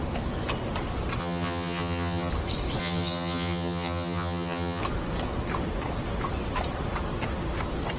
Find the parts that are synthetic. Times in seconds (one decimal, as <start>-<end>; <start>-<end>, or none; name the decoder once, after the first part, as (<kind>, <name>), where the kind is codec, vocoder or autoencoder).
1.2-2.3 (vocoder, HiFi-GAN); 2.8-4.8